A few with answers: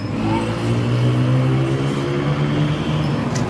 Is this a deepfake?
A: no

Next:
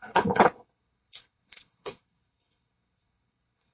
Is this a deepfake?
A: yes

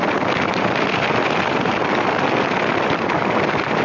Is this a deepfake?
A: no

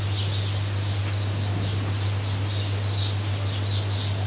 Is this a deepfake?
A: no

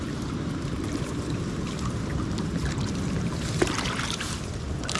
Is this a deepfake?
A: yes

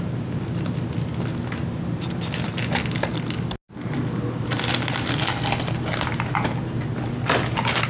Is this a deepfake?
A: no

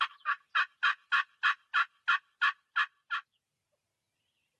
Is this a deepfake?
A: no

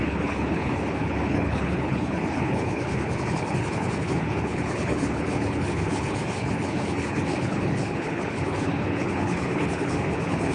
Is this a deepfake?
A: yes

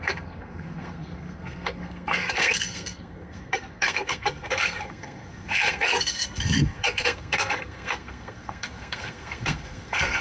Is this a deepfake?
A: yes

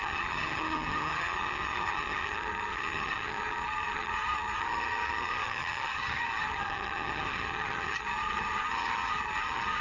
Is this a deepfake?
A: yes